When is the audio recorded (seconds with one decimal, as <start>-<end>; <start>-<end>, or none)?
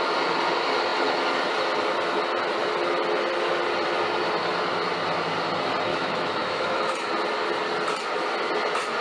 0.0-5.9; 6.9-9.0